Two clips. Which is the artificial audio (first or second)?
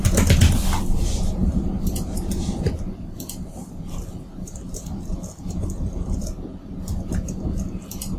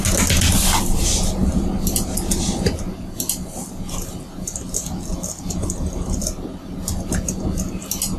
first